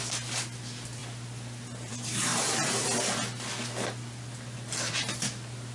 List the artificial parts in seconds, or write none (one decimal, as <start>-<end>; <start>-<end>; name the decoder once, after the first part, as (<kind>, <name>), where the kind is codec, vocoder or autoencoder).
none